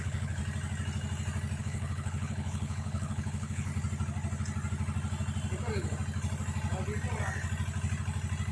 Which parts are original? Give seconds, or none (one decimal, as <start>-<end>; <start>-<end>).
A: 0.4-1.6; 3.7-8.5